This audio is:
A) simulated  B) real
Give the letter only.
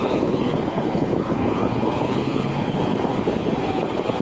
A